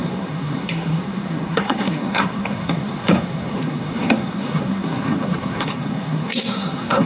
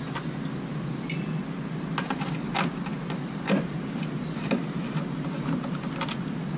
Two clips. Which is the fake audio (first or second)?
first